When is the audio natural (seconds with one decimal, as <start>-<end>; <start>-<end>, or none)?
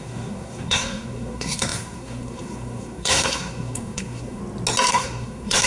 4.4-4.9